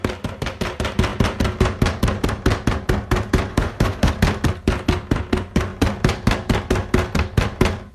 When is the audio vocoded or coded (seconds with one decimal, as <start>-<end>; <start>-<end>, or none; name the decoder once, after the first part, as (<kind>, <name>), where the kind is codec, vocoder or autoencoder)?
3.5-4.1 (autoencoder, DAC-VAE)

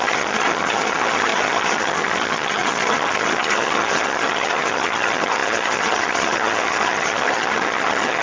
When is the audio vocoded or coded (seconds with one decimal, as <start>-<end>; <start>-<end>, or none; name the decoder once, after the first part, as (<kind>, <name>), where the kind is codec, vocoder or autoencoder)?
0.0-8.2 (vocoder, HiFi-GAN)

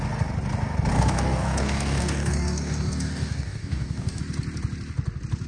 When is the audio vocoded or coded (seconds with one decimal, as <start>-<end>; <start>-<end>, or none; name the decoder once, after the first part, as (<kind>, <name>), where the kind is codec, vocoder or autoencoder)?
0.9-4.2 (codec, DAC)

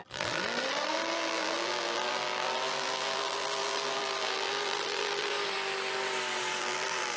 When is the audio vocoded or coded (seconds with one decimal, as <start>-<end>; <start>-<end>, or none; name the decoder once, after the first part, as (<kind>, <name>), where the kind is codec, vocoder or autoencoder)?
0.0-5.3 (vocoder, BigVGAN v2); 6.6-7.2